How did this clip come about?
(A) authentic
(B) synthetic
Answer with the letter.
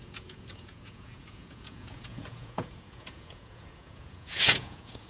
B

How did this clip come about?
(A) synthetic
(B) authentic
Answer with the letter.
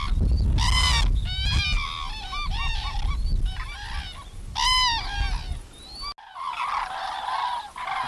B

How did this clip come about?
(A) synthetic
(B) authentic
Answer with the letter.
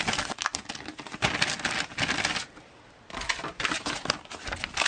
B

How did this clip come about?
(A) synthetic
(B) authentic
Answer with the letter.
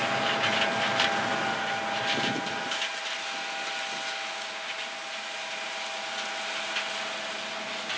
B